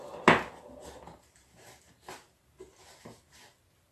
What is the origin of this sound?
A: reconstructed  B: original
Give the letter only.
B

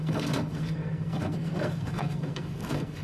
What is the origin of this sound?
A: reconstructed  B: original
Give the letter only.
A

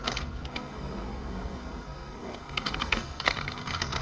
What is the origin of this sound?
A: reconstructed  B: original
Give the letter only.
A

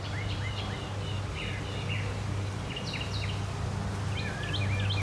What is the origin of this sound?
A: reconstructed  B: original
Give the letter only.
B